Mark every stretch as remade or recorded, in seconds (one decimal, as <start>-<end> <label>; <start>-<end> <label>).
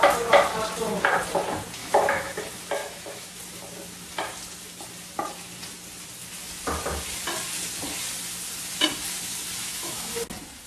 0.0-1.8 recorded; 1.8-2.4 remade; 2.4-2.8 recorded; 2.8-3.4 remade; 3.4-9.6 recorded; 9.6-10.1 remade; 10.1-10.7 recorded